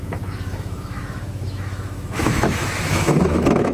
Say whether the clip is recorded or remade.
remade